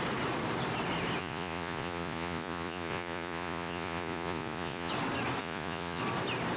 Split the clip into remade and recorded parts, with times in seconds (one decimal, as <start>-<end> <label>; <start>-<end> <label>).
0.0-1.2 recorded; 1.2-4.9 remade; 4.9-5.4 recorded; 5.4-6.0 remade; 6.0-6.6 recorded